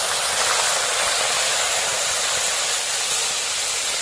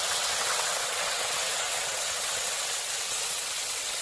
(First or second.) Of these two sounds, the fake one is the second